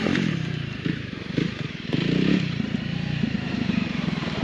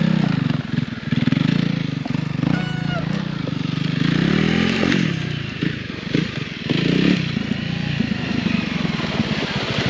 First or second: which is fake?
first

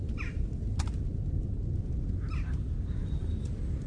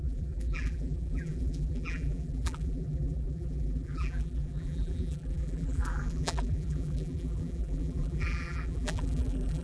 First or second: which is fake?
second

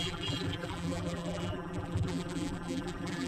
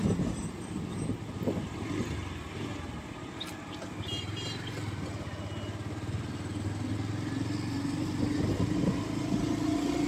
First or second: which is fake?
first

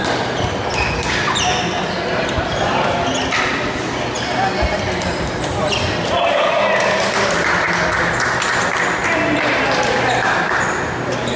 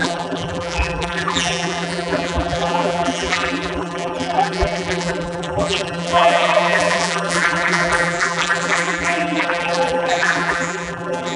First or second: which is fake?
second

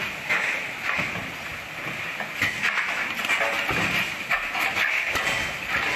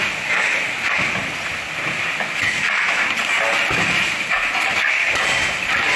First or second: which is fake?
second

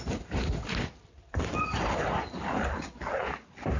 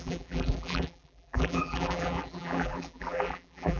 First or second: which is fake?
second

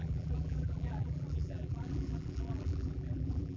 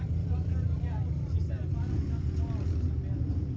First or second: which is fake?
first